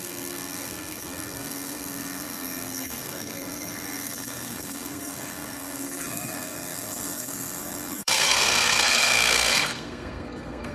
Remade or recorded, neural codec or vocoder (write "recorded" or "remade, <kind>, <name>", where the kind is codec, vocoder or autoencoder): remade, codec, SNAC